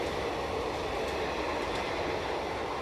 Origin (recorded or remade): recorded